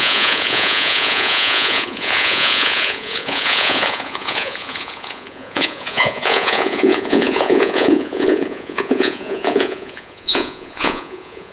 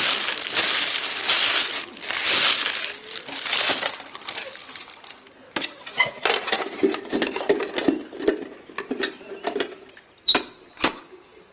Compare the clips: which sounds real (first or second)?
second